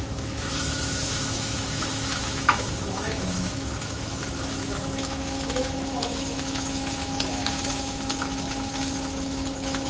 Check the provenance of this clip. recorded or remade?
remade